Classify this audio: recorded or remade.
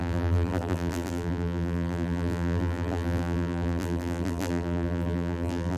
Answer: remade